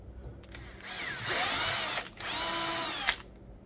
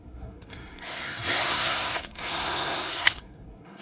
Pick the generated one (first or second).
second